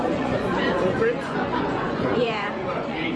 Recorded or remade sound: remade